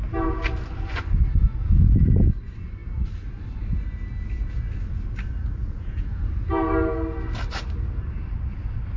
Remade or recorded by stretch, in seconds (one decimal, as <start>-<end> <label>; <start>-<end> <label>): 0.0-1.6 recorded; 1.6-2.3 remade; 2.3-5.6 recorded; 5.6-6.2 remade; 6.2-9.0 recorded